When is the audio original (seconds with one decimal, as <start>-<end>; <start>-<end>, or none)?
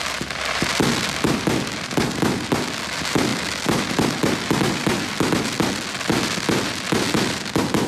0.0-7.9